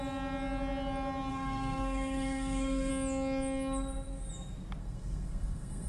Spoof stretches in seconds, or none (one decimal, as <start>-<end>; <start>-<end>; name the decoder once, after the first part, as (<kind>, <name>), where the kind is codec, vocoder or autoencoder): 1.3-2.9 (codec, SNAC); 4.8-5.9